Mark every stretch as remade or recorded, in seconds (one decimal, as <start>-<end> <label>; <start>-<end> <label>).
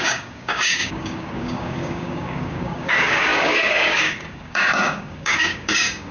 0.0-6.1 remade